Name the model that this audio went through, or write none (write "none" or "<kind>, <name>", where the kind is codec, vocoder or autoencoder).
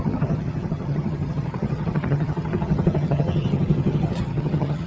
vocoder, HiFi-GAN